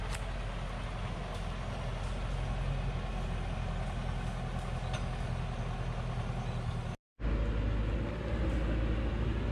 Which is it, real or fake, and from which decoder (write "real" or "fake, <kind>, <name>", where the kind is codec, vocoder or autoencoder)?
real